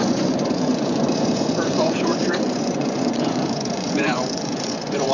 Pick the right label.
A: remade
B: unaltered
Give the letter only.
A